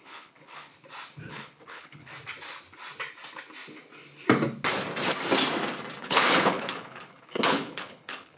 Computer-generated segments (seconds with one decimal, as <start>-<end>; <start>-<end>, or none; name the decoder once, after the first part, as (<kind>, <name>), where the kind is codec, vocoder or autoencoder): 0.0-0.7 (codec, HILCodec); 1.3-2.1; 6.0-8.4